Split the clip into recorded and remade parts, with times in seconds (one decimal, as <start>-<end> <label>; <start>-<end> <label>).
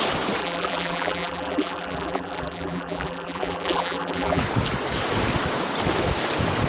0.0-0.4 recorded; 0.4-4.4 remade; 4.4-6.7 recorded